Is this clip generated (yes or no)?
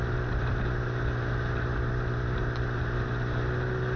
no